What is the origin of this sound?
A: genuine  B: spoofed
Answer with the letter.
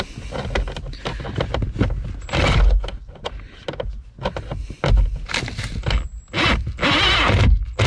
A